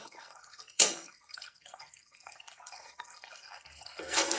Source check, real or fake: fake